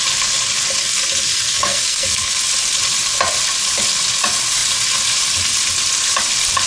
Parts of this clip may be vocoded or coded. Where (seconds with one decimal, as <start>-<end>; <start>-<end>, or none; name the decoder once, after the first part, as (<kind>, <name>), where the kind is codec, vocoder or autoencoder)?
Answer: 0.8-2.3 (codec, SNAC)